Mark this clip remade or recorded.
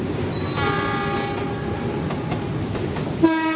recorded